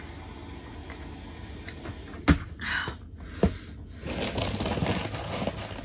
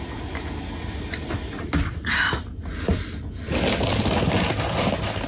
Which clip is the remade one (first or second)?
second